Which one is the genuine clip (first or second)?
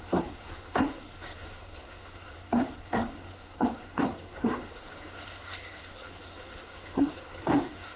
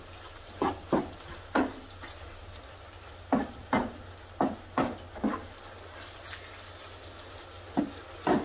second